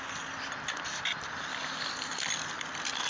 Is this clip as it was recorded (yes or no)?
yes